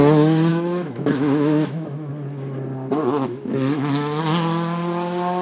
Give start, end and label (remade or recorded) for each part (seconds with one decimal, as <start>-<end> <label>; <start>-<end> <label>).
0.0-0.5 recorded; 0.5-2.1 remade; 2.1-3.0 recorded; 3.0-4.2 remade; 4.2-5.4 recorded